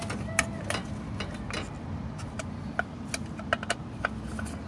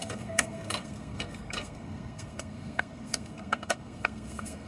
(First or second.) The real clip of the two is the first